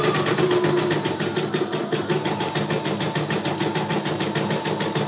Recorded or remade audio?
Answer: recorded